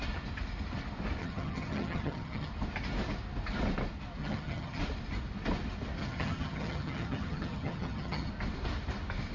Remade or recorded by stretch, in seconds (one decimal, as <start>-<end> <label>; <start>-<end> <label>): 0.0-1.2 recorded; 1.2-2.5 remade; 2.5-4.2 recorded; 4.2-4.8 remade; 4.8-6.0 recorded; 6.0-8.3 remade; 8.3-9.3 recorded

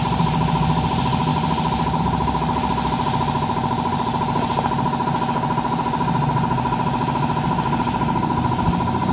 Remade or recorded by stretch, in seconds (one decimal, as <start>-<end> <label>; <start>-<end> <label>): 0.0-9.1 recorded

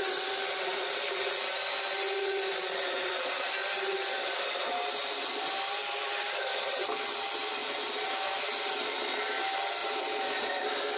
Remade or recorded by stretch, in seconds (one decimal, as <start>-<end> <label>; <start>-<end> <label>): 0.0-5.8 recorded; 5.8-6.8 remade; 6.8-7.6 recorded; 7.6-8.7 remade; 8.7-9.8 recorded; 9.8-11.0 remade

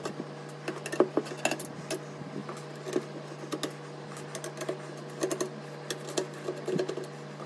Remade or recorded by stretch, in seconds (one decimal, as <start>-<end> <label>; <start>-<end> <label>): 0.0-7.5 recorded

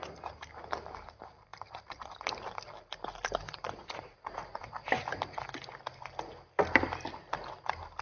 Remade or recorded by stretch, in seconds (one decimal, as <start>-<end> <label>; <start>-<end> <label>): 0.0-3.8 recorded; 3.8-4.7 remade; 4.7-8.0 recorded

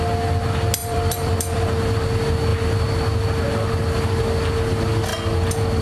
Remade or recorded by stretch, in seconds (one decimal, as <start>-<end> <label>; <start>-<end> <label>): 0.0-0.8 recorded; 0.8-1.7 remade; 1.7-5.8 recorded

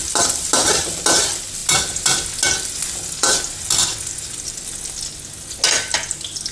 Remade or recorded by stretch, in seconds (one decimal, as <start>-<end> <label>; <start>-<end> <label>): 0.0-6.5 recorded